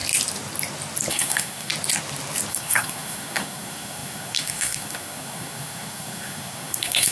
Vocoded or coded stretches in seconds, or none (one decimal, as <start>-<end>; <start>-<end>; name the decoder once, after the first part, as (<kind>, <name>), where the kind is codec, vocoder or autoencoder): 1.1-1.7 (codec, SNAC); 2.5-7.1